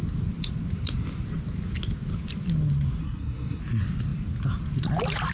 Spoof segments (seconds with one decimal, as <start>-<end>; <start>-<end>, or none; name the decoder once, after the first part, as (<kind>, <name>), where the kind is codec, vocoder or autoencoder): 3.0-3.6 (codec, SNAC)